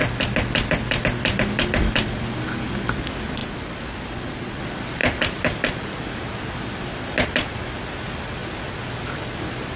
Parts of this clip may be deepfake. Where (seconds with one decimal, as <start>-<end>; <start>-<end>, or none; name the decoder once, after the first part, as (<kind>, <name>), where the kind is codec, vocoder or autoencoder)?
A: none